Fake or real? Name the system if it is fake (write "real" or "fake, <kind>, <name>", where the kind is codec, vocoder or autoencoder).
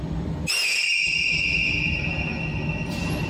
real